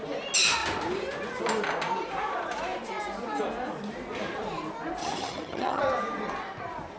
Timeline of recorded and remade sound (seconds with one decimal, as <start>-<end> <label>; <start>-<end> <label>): 0.0-5.0 recorded; 5.0-5.8 remade; 5.8-7.0 recorded